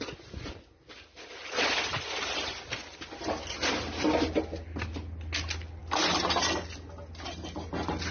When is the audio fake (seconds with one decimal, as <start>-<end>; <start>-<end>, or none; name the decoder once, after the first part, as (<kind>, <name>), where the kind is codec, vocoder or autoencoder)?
none